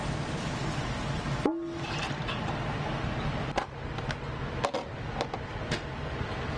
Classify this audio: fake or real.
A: real